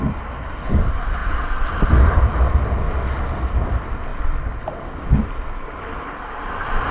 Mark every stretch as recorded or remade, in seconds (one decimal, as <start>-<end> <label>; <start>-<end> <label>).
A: 0.0-6.9 recorded